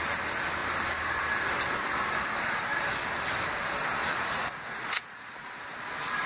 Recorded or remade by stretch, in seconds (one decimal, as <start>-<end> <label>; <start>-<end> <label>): 0.0-4.0 recorded; 4.0-5.4 remade; 5.4-6.3 recorded